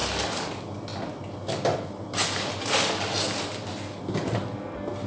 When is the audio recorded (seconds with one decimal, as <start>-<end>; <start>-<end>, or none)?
0.0-5.1